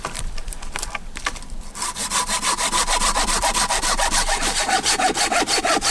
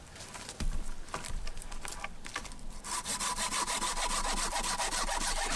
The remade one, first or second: first